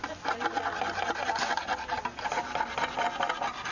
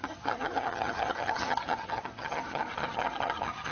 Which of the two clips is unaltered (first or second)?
first